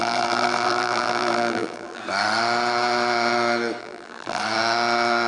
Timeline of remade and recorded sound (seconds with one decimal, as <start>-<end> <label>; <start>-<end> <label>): 0.0-2.0 remade; 2.0-3.8 recorded; 3.8-4.4 remade; 4.4-5.3 recorded